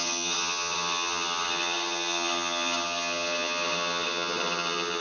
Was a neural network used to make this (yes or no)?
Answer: yes